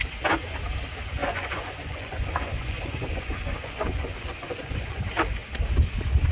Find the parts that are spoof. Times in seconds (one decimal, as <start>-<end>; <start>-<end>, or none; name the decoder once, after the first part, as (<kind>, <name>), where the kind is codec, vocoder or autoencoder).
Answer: 1.2-5.0 (vocoder, Vocos)